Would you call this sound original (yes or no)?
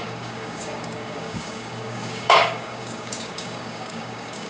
no